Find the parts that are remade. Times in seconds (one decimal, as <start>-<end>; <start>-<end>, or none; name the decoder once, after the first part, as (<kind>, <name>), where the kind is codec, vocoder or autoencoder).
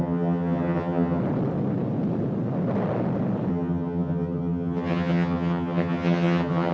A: 0.0-1.2 (vocoder, HiFi-GAN); 3.5-6.7